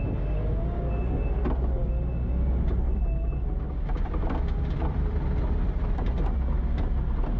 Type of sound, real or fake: real